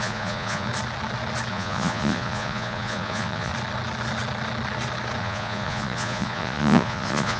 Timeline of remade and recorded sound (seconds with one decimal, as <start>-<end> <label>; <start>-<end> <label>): 0.0-0.7 remade; 0.7-1.5 recorded; 1.5-3.5 remade; 3.5-5.2 recorded; 5.2-7.4 remade